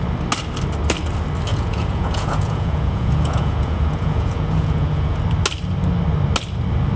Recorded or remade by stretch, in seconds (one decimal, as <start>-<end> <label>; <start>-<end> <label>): 0.0-1.5 recorded; 1.5-5.2 remade; 5.2-7.0 recorded